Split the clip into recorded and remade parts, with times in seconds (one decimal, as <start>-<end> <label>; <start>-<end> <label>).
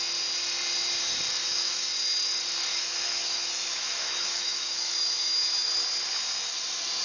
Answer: 0.0-1.4 recorded; 1.4-1.9 remade; 1.9-2.7 recorded; 2.7-5.7 remade; 5.7-7.0 recorded